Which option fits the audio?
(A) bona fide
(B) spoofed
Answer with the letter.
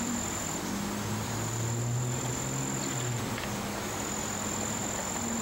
B